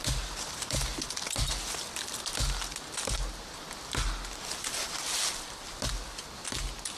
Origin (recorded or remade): recorded